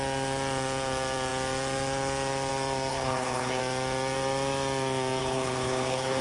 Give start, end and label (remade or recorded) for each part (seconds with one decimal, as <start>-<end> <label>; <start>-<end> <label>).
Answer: 0.0-2.9 recorded; 2.9-3.6 remade; 3.6-5.2 recorded; 5.2-6.2 remade